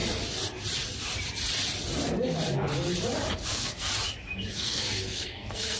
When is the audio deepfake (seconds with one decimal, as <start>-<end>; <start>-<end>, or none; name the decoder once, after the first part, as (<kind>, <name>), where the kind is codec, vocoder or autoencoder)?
3.5-3.9 (codec, SNAC); 4.5-5.8